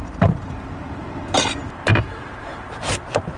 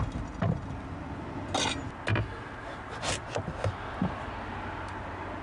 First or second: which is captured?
second